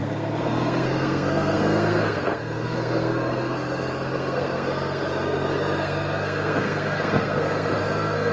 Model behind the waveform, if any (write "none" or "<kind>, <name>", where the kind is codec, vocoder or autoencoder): codec, SNAC